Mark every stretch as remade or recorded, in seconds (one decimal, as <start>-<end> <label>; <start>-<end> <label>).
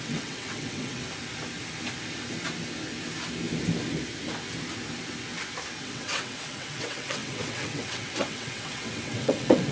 0.0-1.0 remade; 1.0-5.8 recorded; 5.8-9.7 remade